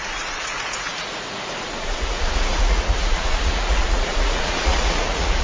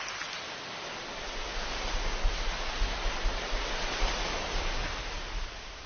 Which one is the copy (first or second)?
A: first